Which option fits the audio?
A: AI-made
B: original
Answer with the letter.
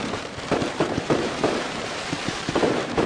A